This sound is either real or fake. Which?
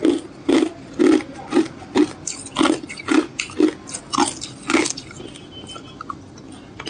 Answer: real